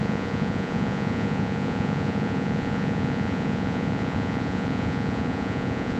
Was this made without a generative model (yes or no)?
no